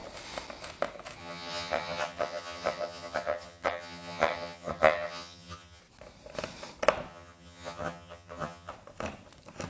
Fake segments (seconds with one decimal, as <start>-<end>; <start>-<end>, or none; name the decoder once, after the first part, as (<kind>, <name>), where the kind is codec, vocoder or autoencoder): 1.2-5.8 (vocoder, HiFi-GAN); 7.1-8.7